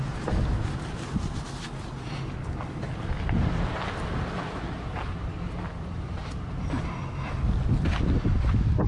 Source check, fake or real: real